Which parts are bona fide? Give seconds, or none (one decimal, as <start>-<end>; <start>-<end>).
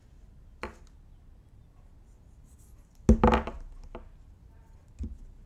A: 0.0-5.5